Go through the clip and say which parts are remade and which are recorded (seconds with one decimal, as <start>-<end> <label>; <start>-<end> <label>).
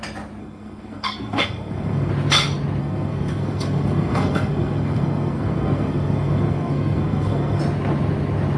0.0-0.4 recorded; 0.4-2.1 remade; 2.1-2.8 recorded; 2.8-7.6 remade; 7.6-8.6 recorded